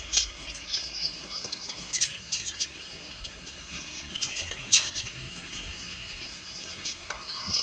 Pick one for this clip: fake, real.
fake